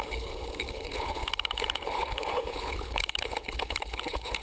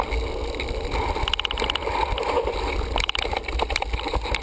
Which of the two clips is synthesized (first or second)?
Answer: first